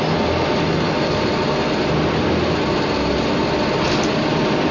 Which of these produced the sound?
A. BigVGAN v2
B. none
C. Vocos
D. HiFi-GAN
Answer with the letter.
B